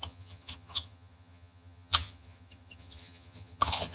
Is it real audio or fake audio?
fake